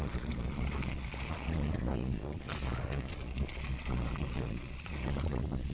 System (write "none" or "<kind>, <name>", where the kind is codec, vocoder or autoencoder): vocoder, Vocos